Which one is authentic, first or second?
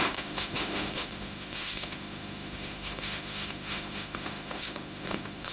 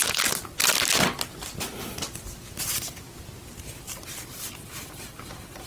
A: second